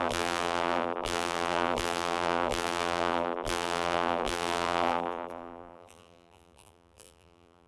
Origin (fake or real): fake